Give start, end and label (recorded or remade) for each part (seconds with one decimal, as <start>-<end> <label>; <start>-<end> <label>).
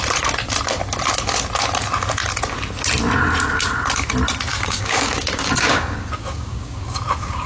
0.0-4.5 recorded; 4.5-7.5 remade